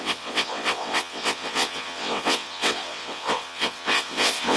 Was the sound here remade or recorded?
remade